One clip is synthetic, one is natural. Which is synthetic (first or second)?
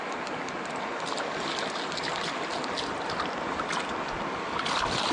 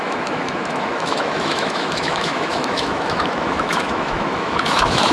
second